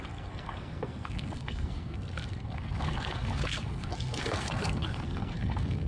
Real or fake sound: fake